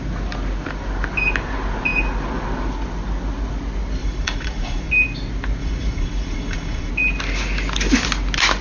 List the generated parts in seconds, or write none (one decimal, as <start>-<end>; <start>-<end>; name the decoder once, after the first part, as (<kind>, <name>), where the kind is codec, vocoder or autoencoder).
4.0-4.9 (vocoder, Vocos); 5.6-6.9